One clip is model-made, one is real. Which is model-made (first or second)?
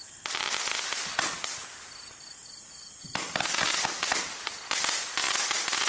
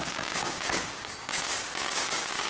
second